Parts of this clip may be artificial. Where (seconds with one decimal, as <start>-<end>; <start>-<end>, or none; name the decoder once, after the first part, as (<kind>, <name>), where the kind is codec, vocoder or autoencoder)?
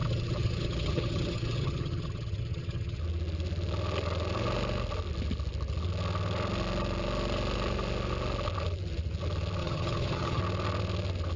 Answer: 0.0-3.0 (vocoder, HiFi-GAN); 9.6-10.4